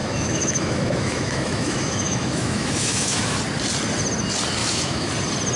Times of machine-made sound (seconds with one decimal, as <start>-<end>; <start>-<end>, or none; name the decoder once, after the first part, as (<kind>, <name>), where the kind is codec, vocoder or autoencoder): 0.0-3.4 (autoencoder, DAC-VAE); 4.6-5.1